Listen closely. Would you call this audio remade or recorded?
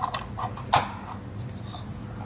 recorded